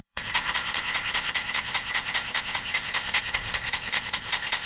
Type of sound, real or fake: fake